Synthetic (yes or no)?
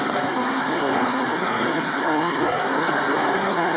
yes